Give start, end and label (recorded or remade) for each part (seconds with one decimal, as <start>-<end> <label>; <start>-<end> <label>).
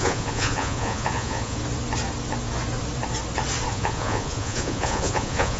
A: 0.0-1.6 remade; 1.6-3.7 recorded; 3.7-5.6 remade